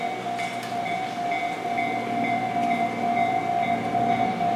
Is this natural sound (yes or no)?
yes